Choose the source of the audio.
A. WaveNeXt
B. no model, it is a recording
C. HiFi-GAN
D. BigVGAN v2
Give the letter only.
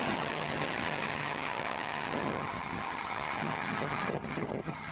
C